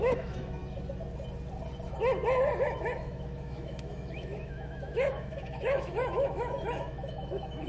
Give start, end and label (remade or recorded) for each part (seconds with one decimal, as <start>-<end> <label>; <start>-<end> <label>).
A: 0.0-0.6 remade; 0.6-2.6 recorded; 2.6-7.7 remade